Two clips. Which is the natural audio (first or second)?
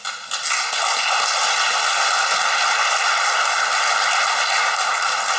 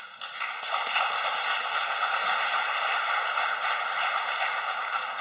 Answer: first